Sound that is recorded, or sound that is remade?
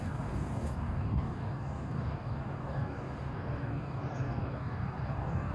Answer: remade